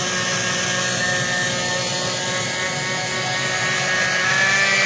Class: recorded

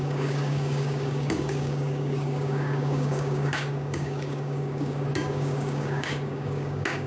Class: remade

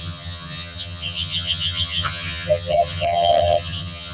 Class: remade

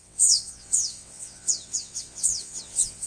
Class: remade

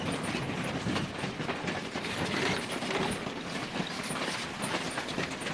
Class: recorded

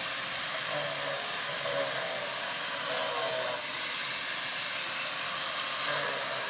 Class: recorded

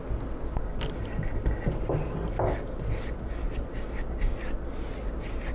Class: recorded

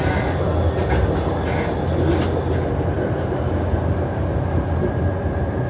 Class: recorded